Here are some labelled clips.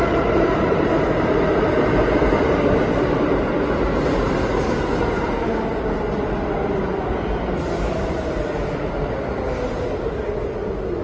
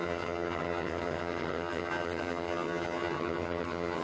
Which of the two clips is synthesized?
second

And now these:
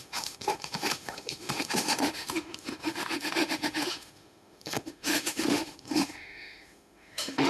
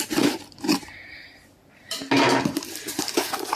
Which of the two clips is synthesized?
first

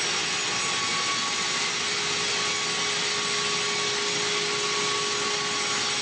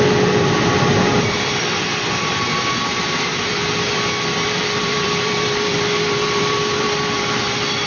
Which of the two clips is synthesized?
second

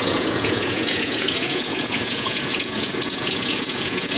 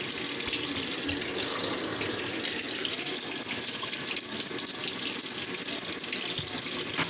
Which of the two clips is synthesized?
first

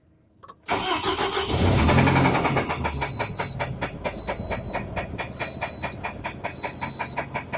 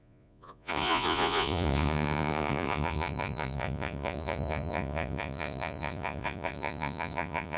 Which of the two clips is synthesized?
second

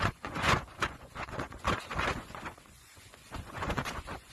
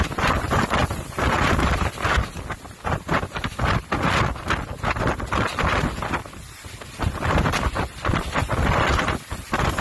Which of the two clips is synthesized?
first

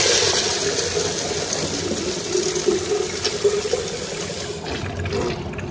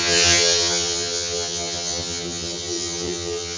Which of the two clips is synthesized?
second